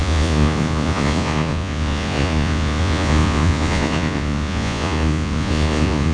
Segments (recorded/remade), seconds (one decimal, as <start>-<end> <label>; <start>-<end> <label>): 0.0-6.1 remade